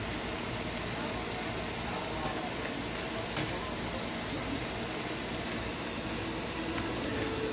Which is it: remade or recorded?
recorded